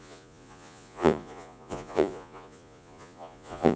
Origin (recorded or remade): remade